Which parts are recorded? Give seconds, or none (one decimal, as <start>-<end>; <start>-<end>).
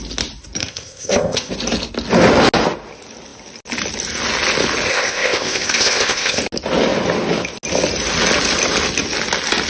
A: 0.0-0.6; 1.5-4.9; 6.4-9.7